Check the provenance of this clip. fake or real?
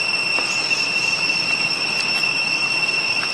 real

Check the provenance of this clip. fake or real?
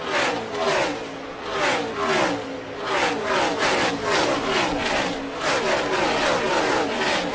real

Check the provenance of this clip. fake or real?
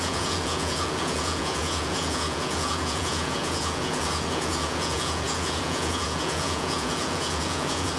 fake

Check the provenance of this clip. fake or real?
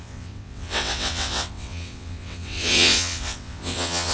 fake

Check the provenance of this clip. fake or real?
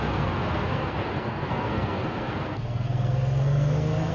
fake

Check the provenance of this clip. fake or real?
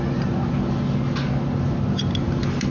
real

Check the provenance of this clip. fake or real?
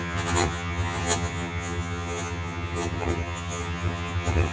fake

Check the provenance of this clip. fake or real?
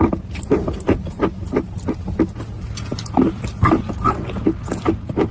real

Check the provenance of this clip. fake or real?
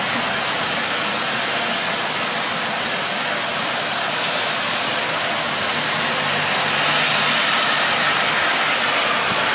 real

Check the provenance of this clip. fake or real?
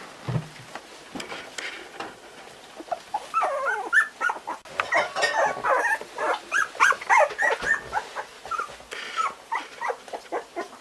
real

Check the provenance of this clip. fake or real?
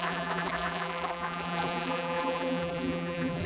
fake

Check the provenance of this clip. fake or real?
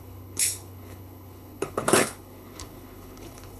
fake